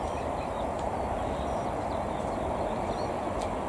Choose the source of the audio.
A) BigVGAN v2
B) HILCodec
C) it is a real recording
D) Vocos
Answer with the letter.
C